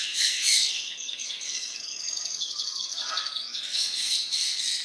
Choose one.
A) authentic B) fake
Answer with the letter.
B